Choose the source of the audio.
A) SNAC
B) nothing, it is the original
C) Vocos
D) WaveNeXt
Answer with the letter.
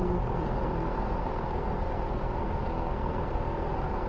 A